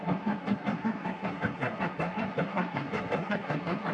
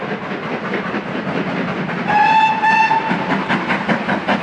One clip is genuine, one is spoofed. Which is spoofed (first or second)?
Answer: first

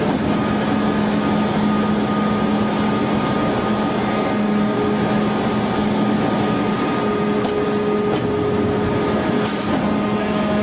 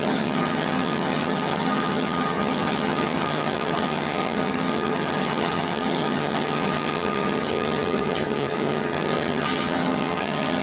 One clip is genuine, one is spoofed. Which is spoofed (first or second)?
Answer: second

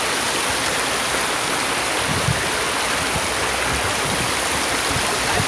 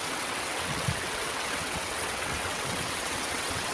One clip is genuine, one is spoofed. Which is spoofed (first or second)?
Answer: second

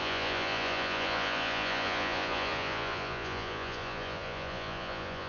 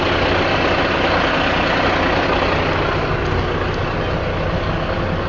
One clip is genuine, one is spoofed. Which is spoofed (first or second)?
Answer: first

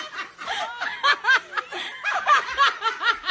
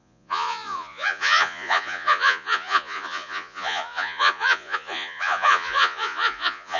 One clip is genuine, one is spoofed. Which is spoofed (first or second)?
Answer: second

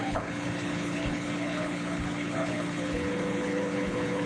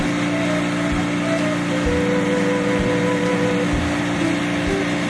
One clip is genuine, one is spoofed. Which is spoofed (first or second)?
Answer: first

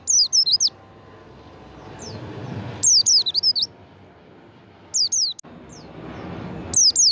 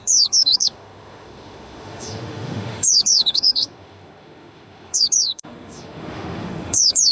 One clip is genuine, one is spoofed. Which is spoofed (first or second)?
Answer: second